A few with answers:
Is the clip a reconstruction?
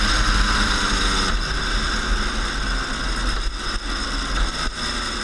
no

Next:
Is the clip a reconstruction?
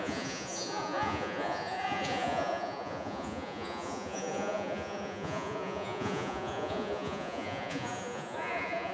yes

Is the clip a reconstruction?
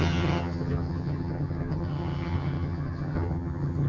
yes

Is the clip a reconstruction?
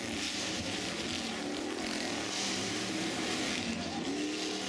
no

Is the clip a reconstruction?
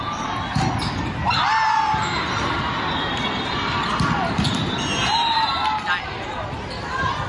yes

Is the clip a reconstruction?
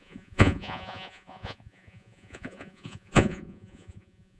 yes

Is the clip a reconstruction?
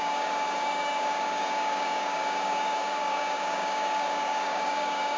yes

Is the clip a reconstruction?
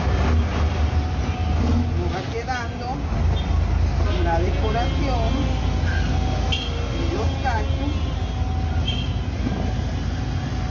no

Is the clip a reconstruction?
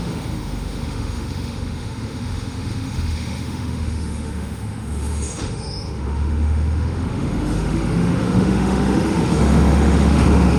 yes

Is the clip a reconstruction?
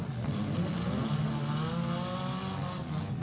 no